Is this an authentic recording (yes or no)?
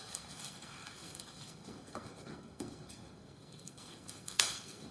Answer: no